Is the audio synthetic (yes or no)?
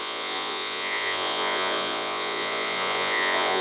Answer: yes